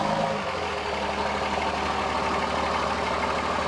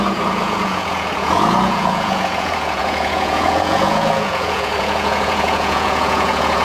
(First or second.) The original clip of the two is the first